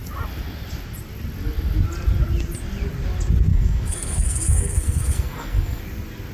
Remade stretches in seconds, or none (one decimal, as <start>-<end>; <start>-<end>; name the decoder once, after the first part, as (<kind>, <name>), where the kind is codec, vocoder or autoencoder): 3.5-5.8 (codec, SNAC)